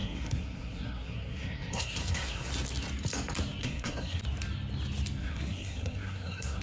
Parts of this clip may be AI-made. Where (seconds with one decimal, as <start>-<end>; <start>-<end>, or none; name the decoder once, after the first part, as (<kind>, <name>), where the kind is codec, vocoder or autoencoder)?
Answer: 0.0-2.5 (codec, SNAC); 3.6-4.2; 5.2-6.6